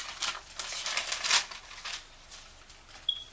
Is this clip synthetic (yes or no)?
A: no